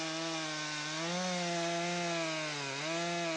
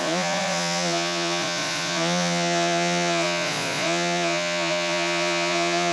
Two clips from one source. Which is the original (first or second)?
first